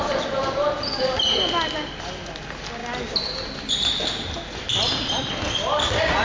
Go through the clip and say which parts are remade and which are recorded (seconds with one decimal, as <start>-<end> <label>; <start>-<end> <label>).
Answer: 0.0-6.2 recorded